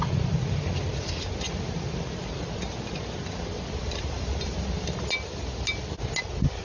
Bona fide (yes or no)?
yes